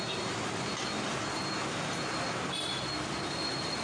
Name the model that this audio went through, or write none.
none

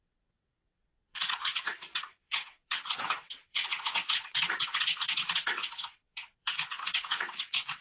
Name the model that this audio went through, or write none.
vocoder, WaveNeXt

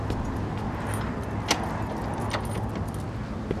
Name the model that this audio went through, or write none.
none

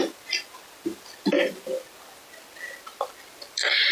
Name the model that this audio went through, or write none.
none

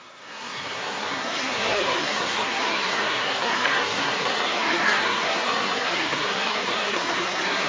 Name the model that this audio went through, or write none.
codec, SNAC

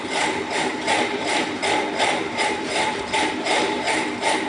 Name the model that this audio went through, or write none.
vocoder, BigVGAN v2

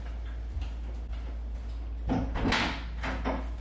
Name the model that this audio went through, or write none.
none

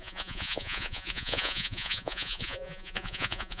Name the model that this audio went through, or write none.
vocoder, Vocos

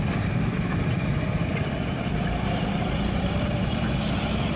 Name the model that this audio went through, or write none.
vocoder, BigVGAN v2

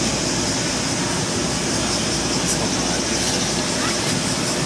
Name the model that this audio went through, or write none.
none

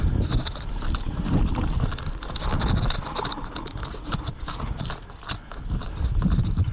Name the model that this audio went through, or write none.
none